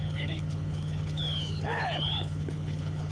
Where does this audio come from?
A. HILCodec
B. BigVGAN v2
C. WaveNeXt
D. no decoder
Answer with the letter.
A